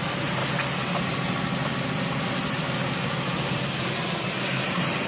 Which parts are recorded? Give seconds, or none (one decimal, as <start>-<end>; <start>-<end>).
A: 0.0-5.1